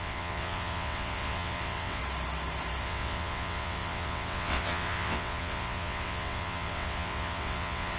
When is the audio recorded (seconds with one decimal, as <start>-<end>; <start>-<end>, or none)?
2.0-2.8